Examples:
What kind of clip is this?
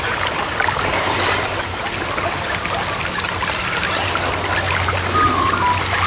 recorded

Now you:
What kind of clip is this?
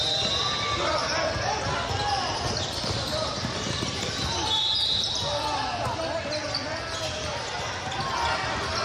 recorded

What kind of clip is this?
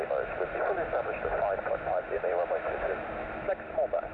recorded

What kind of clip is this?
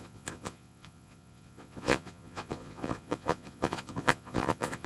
remade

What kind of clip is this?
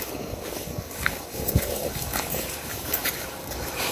remade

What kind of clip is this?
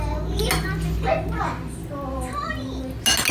recorded